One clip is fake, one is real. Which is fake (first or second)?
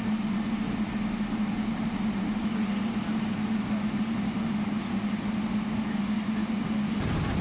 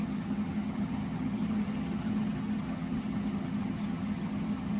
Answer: second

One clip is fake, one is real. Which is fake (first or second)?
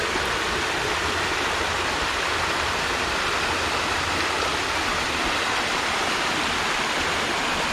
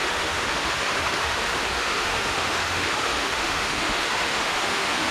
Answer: second